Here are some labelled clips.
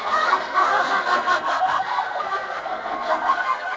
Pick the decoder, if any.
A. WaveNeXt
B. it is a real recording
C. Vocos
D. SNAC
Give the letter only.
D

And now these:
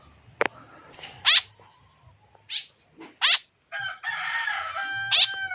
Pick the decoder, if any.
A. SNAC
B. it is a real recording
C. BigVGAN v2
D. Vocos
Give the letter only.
B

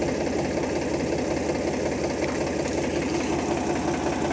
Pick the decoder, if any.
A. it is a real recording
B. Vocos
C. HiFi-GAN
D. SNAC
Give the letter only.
A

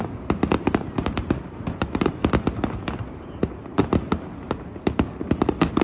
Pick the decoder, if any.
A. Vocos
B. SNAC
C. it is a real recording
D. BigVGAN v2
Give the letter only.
C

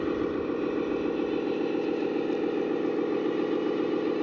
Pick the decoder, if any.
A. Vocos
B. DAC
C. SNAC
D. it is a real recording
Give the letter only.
D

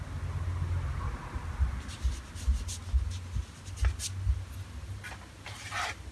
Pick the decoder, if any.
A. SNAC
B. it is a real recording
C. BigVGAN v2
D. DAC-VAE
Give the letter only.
B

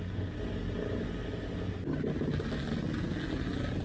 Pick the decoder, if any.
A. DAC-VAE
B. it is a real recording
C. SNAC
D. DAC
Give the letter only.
B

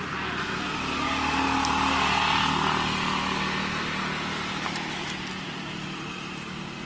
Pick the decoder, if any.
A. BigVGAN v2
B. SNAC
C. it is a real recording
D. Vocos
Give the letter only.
C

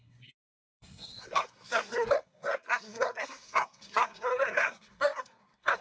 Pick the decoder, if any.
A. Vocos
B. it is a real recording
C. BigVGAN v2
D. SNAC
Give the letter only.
D